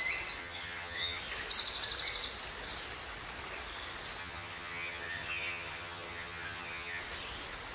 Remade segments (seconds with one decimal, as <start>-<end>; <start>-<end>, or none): 0.4-1.2; 4.2-7.0